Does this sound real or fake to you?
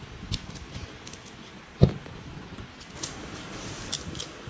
real